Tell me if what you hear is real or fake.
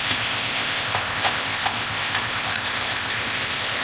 fake